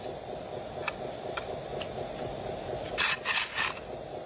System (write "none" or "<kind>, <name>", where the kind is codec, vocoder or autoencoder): none